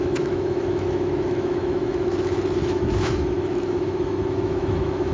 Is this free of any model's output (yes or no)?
no